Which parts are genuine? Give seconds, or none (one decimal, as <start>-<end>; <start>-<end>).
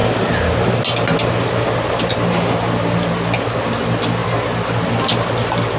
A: 0.0-5.8